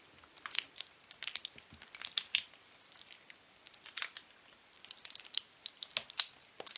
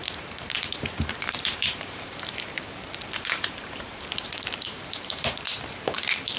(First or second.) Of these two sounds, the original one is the first